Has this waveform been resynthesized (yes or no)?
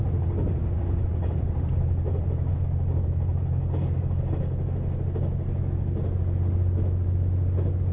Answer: no